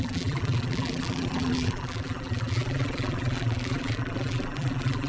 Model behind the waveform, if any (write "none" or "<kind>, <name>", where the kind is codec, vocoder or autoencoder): vocoder, BigVGAN v2